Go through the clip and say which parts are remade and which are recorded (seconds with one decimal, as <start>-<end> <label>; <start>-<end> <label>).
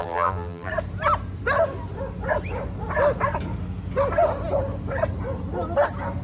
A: 0.0-0.7 remade; 0.7-6.2 recorded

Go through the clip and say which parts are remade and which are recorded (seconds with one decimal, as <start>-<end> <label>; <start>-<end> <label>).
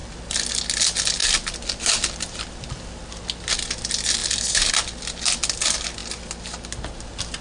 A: 0.0-0.6 remade; 0.6-1.2 recorded; 1.2-3.2 remade; 3.2-7.4 recorded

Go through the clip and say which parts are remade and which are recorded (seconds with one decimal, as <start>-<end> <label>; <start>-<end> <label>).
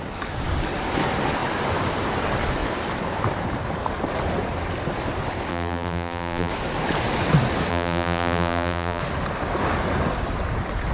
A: 0.0-5.5 recorded; 5.5-6.5 remade; 6.5-7.7 recorded; 7.7-9.0 remade; 9.0-10.9 recorded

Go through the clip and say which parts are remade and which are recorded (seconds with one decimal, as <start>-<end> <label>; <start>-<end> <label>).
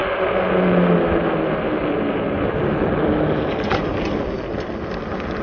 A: 0.0-5.4 recorded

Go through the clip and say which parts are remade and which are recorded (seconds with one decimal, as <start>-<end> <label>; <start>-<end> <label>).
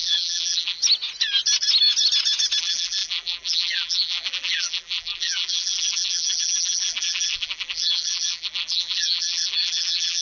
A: 0.0-0.8 remade; 0.8-2.6 recorded; 2.6-10.2 remade